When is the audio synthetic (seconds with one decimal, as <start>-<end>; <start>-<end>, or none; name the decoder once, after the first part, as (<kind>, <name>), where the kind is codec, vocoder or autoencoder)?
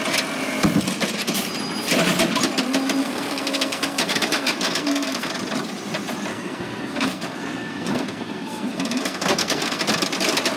3.0-5.3 (codec, SNAC); 6.3-9.8